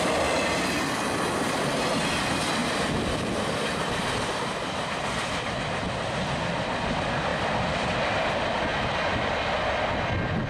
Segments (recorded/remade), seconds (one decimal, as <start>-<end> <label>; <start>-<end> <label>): 0.0-2.6 recorded; 2.6-5.5 remade; 5.5-10.5 recorded